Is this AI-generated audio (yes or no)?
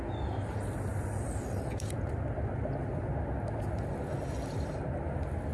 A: no